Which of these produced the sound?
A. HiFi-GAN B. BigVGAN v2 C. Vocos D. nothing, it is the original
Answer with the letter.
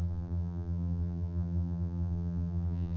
B